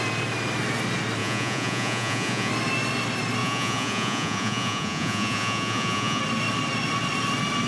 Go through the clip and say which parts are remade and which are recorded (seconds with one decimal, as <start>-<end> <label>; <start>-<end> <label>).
0.0-1.2 recorded; 1.2-2.5 remade; 2.5-3.4 recorded; 3.4-6.2 remade; 6.2-7.7 recorded